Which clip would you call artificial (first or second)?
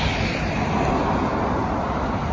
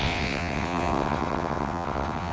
second